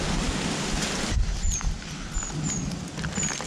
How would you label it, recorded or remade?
recorded